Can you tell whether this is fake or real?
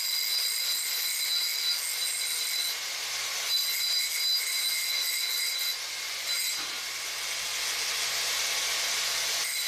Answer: real